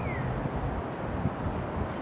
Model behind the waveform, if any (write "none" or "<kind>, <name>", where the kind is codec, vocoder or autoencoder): none